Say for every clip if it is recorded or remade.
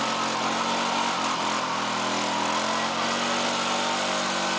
recorded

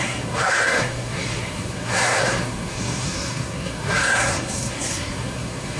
remade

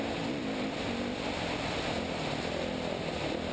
recorded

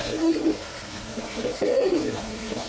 remade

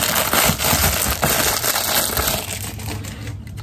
recorded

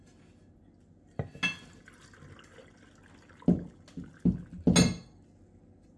recorded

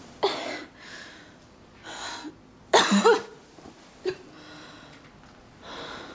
recorded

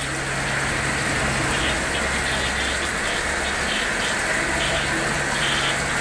recorded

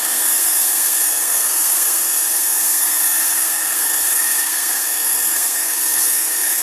remade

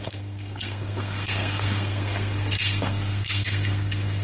remade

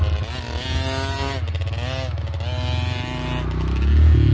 recorded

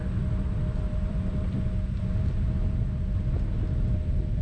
recorded